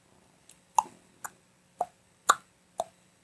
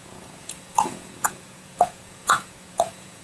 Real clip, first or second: first